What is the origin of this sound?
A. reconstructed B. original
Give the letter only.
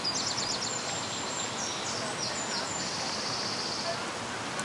B